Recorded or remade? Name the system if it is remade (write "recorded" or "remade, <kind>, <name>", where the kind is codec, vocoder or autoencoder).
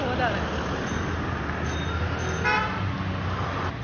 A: recorded